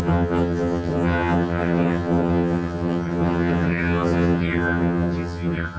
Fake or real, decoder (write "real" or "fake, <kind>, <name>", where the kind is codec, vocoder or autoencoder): fake, vocoder, HiFi-GAN